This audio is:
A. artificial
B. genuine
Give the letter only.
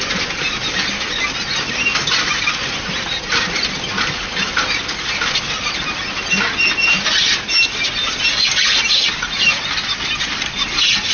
B